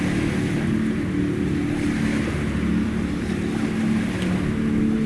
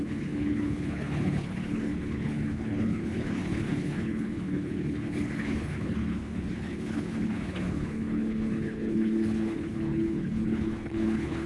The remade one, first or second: second